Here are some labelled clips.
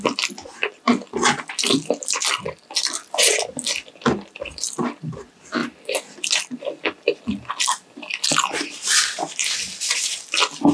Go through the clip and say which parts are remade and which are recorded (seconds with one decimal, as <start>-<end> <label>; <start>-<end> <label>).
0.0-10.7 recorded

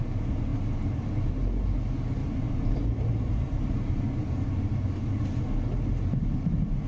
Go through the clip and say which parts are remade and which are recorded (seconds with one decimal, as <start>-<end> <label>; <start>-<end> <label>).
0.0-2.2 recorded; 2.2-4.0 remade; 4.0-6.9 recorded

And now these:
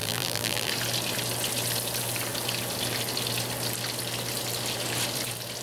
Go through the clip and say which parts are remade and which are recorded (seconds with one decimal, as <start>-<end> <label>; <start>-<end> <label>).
0.0-0.7 remade; 0.7-5.6 recorded

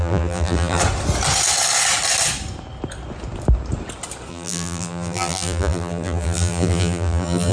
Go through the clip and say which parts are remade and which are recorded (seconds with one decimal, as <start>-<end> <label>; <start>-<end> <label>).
0.0-0.8 remade; 0.8-4.3 recorded; 4.3-7.5 remade

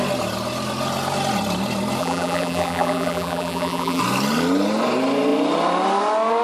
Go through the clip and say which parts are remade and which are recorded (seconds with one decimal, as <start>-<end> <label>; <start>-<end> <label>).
0.0-2.0 recorded; 2.0-4.0 remade; 4.0-6.4 recorded